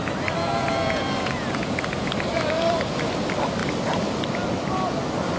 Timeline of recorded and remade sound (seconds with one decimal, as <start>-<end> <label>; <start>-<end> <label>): 0.0-0.4 recorded; 0.4-2.1 remade; 2.1-5.4 recorded